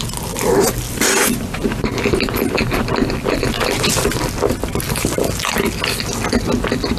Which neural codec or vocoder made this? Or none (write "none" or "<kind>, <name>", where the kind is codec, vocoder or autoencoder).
none